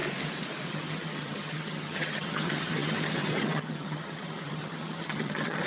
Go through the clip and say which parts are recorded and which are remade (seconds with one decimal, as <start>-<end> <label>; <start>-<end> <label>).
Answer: 0.0-0.7 recorded; 0.7-5.7 remade